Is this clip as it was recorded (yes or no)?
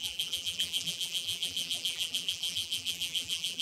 no